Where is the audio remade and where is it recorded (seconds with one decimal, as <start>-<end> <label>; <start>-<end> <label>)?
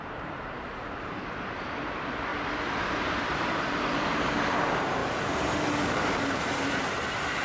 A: 0.0-2.3 remade; 2.3-3.5 recorded; 3.5-5.0 remade; 5.0-5.9 recorded; 5.9-7.4 remade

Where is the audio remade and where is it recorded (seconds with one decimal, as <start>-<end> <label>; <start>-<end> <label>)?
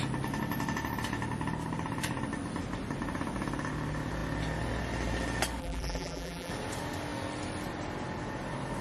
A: 0.0-5.6 recorded; 5.6-6.5 remade; 6.5-8.8 recorded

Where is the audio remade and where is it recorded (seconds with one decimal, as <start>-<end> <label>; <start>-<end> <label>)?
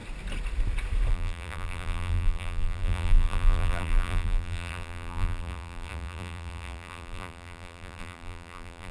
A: 0.0-1.1 recorded; 1.1-8.9 remade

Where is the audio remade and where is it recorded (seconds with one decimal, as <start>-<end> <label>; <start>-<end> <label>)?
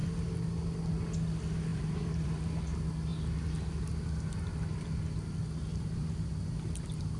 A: 0.0-1.7 recorded; 1.7-2.6 remade; 2.6-5.7 recorded; 5.7-6.3 remade; 6.3-7.2 recorded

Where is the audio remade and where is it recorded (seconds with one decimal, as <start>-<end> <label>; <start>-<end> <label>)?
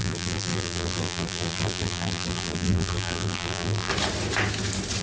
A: 0.0-3.9 remade; 3.9-5.0 recorded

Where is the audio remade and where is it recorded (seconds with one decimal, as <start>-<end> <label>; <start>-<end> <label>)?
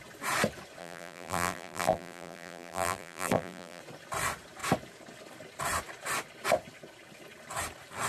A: 0.0-0.8 recorded; 0.8-3.8 remade; 3.8-8.1 recorded